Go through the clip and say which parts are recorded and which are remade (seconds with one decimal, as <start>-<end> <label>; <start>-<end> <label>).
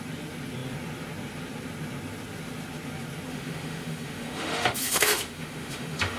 0.0-3.3 recorded; 3.3-6.2 remade